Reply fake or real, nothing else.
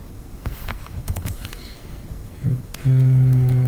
fake